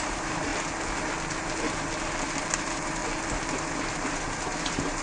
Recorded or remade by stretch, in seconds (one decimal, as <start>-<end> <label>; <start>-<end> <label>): 0.0-0.5 remade; 0.5-2.4 recorded; 2.4-3.0 remade; 3.0-4.6 recorded; 4.6-5.0 remade